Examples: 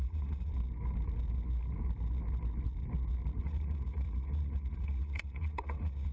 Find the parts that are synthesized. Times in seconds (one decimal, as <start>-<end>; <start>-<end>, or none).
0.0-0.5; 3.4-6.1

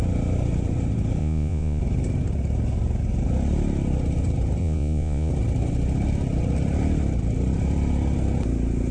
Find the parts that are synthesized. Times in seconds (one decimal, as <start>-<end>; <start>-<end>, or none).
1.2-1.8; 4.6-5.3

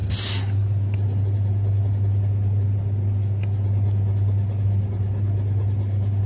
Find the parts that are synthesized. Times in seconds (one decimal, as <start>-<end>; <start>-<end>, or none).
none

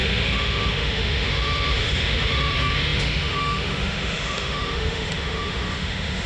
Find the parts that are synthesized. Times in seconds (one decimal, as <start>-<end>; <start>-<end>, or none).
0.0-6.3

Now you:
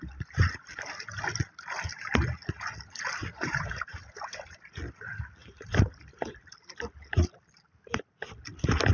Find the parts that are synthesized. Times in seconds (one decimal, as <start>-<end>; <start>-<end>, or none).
3.2-4.7; 5.4-6.2